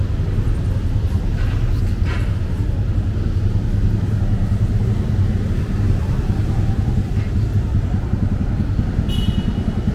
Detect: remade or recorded recorded